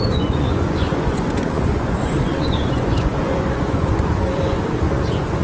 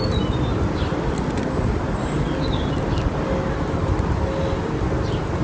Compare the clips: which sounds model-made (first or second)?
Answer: first